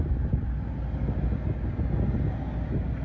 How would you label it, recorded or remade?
recorded